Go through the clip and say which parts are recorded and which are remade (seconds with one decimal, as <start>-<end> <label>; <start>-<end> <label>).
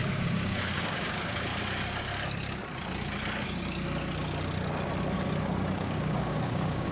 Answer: 0.0-1.5 remade; 1.5-5.4 recorded; 5.4-6.9 remade